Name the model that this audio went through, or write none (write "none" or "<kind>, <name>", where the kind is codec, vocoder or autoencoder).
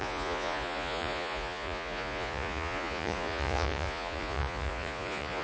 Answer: vocoder, Vocos